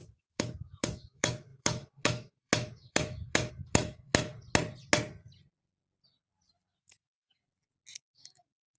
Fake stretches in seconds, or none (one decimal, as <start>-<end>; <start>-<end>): 0.0-4.3; 6.8-7.4; 8.0-8.8